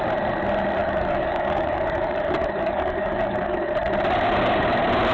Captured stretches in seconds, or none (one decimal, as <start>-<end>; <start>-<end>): 0.0-0.8; 3.9-5.1